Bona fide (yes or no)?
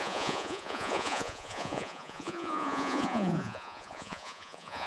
no